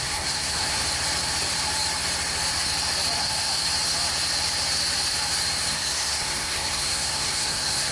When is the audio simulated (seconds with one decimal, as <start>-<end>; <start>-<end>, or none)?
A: 0.0-0.8; 3.2-3.6; 5.7-7.9